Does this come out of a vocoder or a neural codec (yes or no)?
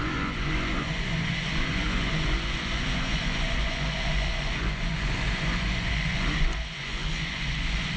yes